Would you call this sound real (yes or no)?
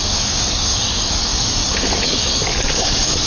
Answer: no